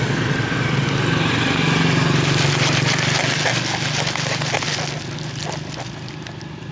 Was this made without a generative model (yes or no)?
yes